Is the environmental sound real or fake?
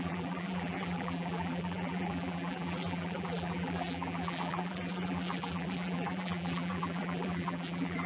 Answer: fake